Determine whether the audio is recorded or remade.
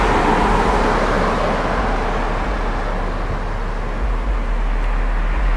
recorded